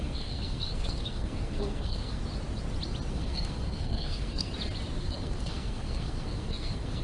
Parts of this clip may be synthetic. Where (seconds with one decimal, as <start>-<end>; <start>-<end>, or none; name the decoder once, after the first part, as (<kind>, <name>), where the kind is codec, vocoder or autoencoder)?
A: 0.0-2.2 (codec, SNAC); 3.1-4.5; 5.0-7.0

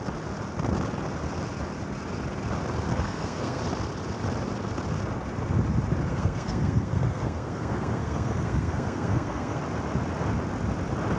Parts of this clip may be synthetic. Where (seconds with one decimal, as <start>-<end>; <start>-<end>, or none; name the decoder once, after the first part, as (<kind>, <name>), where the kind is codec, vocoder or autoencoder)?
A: 2.9-3.6 (codec, SNAC); 6.1-9.6

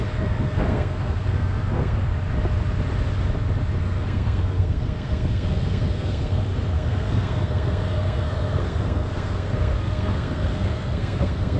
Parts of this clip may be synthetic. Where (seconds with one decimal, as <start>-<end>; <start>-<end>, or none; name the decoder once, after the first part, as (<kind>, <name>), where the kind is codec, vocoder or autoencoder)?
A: 0.0-2.1 (codec, SNAC); 3.8-11.6

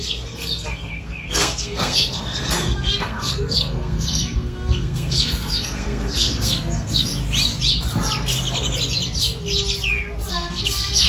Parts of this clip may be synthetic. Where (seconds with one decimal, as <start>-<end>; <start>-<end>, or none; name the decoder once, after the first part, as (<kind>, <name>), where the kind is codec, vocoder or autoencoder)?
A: 0.0-7.1 (codec, SNAC); 10.3-11.1